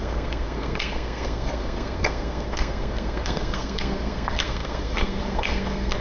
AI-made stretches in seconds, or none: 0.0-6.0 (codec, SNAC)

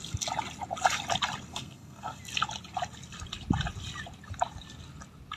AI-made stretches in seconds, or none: 1.5-2.2 (codec, SNAC)

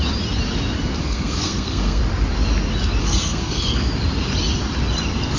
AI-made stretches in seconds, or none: 1.0-2.0 (codec, SNAC); 3.0-3.9

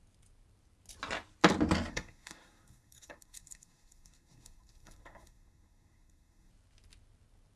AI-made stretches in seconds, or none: 1.9-6.5 (codec, SNAC)